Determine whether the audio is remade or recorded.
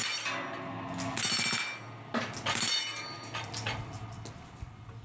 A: recorded